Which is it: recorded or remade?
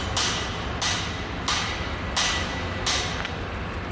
recorded